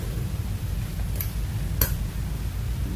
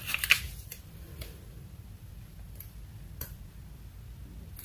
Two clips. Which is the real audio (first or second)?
first